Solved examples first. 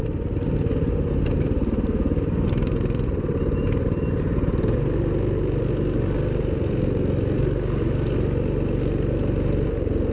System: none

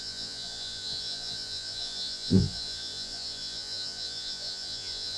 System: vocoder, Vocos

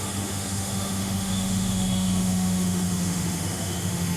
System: autoencoder, DAC-VAE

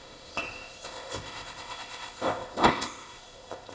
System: codec, ZipCodec